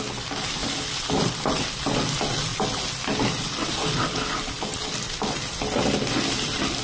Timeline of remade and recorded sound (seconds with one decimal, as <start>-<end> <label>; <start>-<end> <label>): 0.0-6.8 recorded